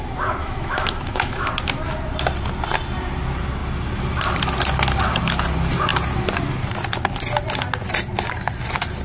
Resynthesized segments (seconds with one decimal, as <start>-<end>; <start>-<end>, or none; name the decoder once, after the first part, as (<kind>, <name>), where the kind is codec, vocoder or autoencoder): 0.4-1.5 (autoencoder, DAC-VAE)